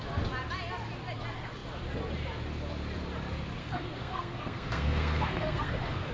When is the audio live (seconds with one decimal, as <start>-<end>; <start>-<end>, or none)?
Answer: 0.0-3.6